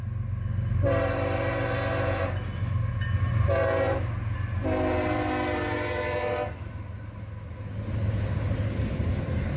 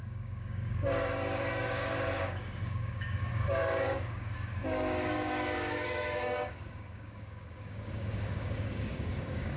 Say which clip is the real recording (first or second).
first